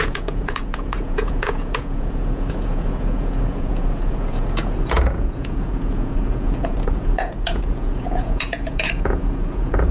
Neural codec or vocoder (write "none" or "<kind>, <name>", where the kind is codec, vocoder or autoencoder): vocoder, Vocos